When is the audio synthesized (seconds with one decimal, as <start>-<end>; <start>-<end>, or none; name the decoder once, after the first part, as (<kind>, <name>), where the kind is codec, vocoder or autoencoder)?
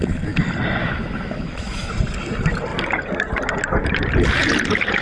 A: 0.8-1.9 (autoencoder, DAC-VAE)